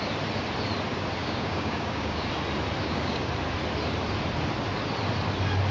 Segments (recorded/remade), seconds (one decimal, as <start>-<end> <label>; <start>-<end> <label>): 0.0-1.2 recorded; 1.2-2.3 remade; 2.3-2.8 recorded; 2.8-3.3 remade; 3.3-5.7 recorded